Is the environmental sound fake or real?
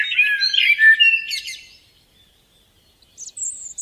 real